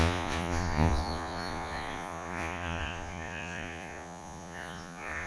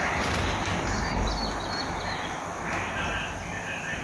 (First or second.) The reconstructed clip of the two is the first